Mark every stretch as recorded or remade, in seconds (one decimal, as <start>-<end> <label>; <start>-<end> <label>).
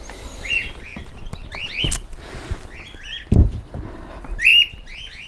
0.0-5.3 recorded